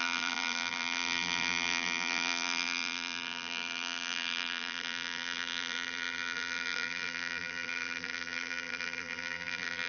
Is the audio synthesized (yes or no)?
yes